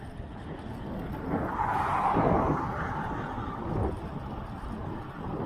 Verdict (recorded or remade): recorded